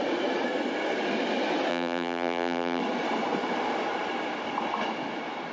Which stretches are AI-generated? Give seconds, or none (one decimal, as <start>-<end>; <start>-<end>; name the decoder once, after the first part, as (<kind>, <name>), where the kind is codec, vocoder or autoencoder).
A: 1.7-2.8 (vocoder, BigVGAN v2)

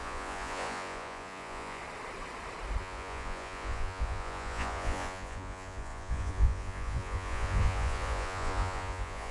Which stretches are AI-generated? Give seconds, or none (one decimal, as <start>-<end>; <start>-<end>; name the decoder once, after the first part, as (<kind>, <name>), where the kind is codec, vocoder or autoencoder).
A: 0.0-1.8 (vocoder, Vocos); 2.8-9.3

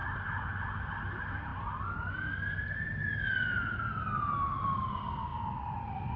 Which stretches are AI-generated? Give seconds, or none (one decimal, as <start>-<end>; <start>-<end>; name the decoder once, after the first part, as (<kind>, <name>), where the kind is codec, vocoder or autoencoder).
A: 1.5-2.1 (vocoder, BigVGAN v2); 5.3-5.8

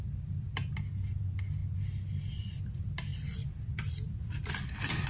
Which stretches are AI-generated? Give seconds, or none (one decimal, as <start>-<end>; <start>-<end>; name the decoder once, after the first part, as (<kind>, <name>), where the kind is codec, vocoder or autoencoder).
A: none

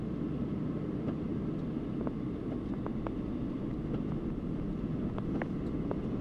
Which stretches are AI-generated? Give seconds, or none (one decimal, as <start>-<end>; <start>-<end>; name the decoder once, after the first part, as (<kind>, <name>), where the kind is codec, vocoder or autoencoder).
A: none

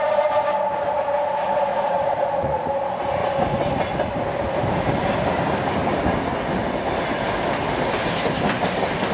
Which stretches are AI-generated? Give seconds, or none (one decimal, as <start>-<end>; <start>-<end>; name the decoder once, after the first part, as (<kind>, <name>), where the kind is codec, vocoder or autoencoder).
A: 1.7-2.7 (vocoder, Vocos)

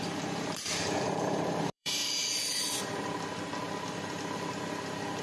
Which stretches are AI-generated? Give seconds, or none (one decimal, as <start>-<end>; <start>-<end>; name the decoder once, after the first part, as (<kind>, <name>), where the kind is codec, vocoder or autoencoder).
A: 0.0-2.0 (vocoder, BigVGAN v2)